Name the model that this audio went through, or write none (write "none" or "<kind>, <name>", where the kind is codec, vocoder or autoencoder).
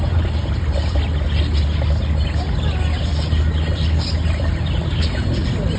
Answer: none